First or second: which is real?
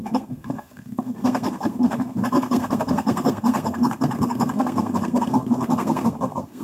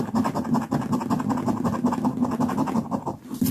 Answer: second